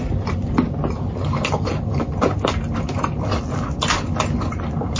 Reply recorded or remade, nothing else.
recorded